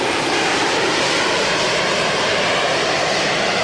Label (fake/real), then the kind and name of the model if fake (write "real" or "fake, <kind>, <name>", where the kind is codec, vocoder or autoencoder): fake, vocoder, BigVGAN v2